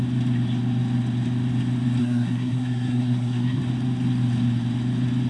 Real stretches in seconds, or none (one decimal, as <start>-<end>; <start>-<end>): 0.0-2.0; 3.6-5.3